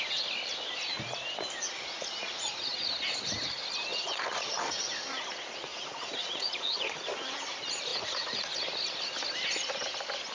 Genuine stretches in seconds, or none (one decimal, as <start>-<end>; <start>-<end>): 0.0-2.2; 2.7-3.9; 4.8-5.7; 6.9-7.9; 8.5-10.3